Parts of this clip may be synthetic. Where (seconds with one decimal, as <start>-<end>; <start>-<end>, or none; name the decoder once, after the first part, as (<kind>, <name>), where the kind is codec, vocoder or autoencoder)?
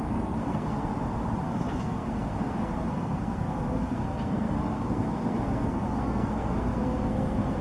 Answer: 0.0-0.9 (codec, SNAC); 1.4-7.6